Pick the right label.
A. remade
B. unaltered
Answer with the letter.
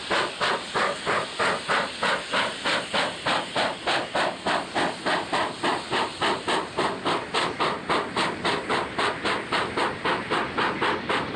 B